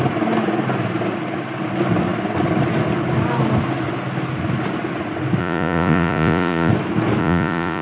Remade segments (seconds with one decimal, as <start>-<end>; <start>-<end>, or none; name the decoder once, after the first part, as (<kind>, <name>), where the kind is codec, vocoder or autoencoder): 5.4-6.7 (vocoder, Vocos); 7.2-7.8